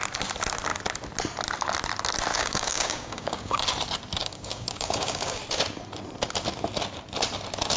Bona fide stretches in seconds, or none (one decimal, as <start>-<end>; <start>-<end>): 0.0-2.3; 3.6-4.2; 5.4-7.8